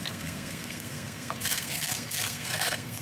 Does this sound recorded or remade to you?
remade